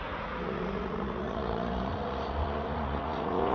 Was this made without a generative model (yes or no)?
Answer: no